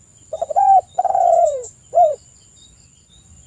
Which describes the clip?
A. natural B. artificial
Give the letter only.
B